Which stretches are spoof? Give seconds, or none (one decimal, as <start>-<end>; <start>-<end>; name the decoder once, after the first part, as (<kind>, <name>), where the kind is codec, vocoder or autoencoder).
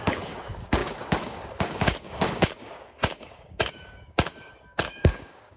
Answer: 0.0-5.6 (codec, DAC)